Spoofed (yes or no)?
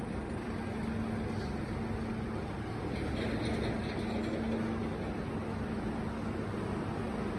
no